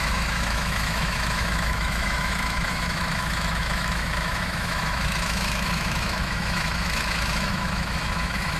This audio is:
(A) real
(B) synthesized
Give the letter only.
B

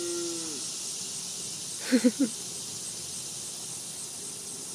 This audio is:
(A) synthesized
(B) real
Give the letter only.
B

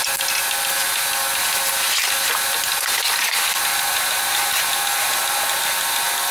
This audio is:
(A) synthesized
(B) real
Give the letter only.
B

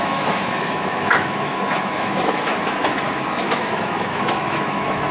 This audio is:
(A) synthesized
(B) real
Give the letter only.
A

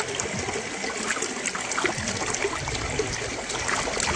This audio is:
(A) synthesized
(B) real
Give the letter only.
B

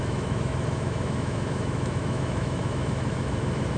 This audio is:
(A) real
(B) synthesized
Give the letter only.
B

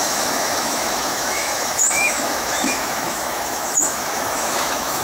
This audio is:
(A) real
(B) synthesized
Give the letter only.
B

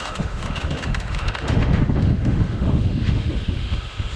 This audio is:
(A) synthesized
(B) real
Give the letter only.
A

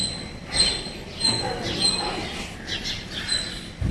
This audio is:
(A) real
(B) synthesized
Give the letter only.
A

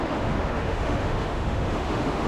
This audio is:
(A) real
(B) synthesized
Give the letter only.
B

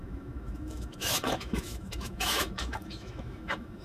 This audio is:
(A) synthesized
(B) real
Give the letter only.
A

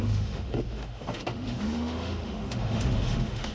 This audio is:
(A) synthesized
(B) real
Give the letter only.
A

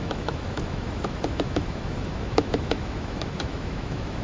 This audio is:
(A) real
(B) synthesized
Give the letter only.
B